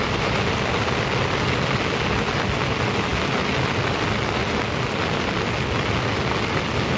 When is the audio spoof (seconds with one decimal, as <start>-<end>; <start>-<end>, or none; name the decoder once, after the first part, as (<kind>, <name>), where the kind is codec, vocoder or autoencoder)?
none